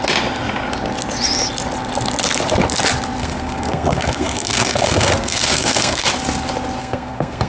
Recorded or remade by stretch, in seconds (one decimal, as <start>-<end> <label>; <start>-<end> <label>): 0.0-3.2 recorded; 3.2-6.1 remade; 6.1-6.8 recorded; 6.8-7.5 remade